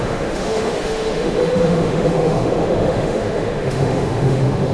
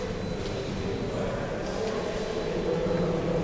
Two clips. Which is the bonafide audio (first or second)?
second